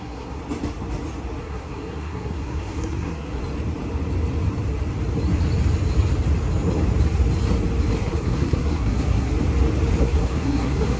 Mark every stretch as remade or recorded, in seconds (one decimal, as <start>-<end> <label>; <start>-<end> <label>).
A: 0.0-0.4 remade; 0.4-1.4 recorded; 1.4-3.4 remade; 3.4-8.0 recorded; 8.0-9.3 remade; 9.3-10.0 recorded; 10.0-11.0 remade